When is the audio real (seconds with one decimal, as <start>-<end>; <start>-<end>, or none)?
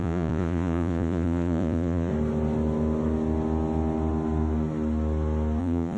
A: 2.1-5.6